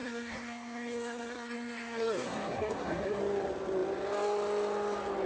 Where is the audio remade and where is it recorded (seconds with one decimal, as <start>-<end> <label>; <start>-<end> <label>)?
0.0-3.2 remade; 3.2-5.3 recorded